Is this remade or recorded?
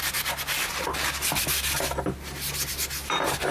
recorded